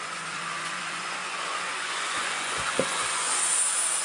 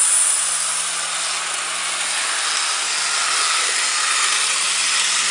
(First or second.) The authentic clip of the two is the second